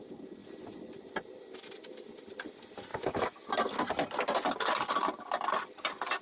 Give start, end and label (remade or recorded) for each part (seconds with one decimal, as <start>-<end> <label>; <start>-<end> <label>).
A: 0.0-2.9 recorded; 2.9-3.5 remade; 3.5-6.2 recorded